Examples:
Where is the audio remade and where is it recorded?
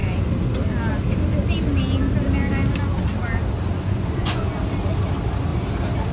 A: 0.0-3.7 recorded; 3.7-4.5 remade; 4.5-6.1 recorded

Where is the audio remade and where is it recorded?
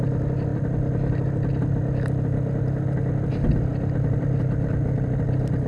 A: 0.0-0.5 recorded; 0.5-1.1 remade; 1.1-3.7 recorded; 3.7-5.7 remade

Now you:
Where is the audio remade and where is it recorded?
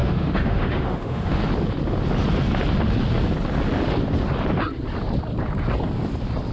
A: 0.0-1.4 remade; 1.4-6.5 recorded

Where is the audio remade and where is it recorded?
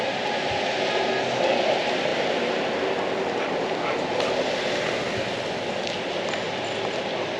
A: 0.0-7.4 recorded